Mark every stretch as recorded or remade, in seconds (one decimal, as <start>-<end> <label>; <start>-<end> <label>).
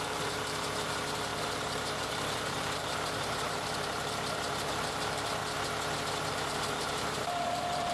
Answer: 0.0-5.4 remade; 5.4-6.3 recorded; 6.3-7.9 remade